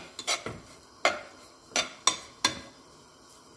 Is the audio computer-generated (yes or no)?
no